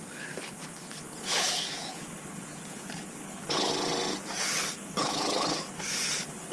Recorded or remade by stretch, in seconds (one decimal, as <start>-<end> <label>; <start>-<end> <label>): 0.0-3.7 remade; 3.7-4.4 recorded; 4.4-6.5 remade